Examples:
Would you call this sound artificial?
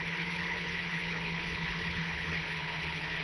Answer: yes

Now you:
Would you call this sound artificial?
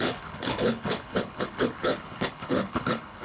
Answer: yes